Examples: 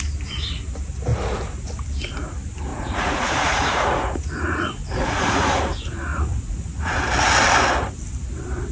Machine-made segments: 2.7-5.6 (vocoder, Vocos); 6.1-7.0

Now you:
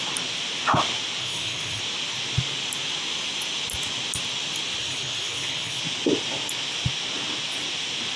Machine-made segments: 1.2-1.8 (codec, HILCodec); 4.8-5.8

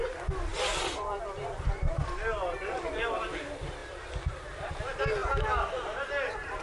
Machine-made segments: 0.5-2.9 (vocoder, BigVGAN v2)

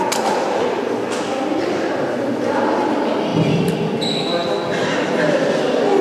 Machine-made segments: none

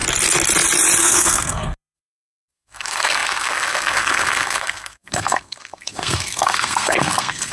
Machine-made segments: 1.0-7.5 (codec, SNAC)

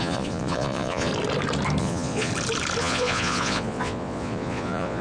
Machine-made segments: 0.0-1.1 (vocoder, Vocos); 1.8-2.3; 2.8-5.0

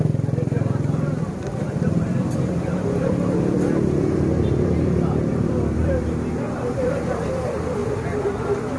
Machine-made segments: 0.0-8.8 (vocoder, BigVGAN v2)

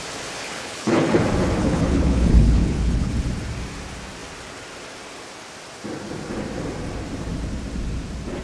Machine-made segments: 0.4-1.2 (codec, HILCodec); 1.6-3.1